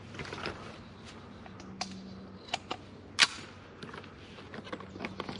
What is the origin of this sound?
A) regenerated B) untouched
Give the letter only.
B